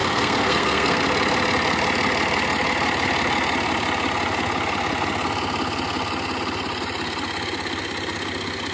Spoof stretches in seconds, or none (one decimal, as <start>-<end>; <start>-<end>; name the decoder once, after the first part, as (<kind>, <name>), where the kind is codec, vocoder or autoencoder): 0.0-1.0 (codec, SNAC)